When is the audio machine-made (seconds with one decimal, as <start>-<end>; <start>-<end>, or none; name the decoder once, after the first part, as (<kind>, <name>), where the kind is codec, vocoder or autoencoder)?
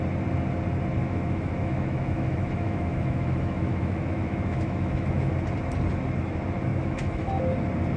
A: 1.0-5.3 (autoencoder, DAC-VAE); 6.7-7.3